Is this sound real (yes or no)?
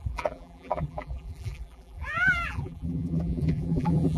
no